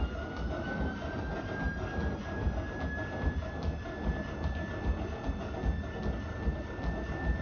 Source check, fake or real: real